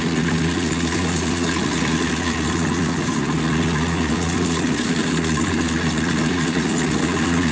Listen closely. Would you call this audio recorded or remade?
remade